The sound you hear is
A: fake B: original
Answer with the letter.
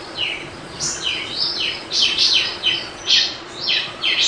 A